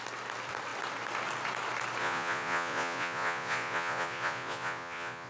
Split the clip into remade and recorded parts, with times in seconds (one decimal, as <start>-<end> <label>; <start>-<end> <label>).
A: 0.0-2.0 recorded; 2.0-5.3 remade